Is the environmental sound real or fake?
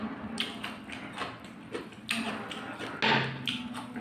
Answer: real